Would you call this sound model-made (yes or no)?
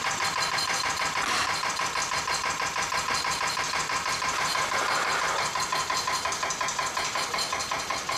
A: no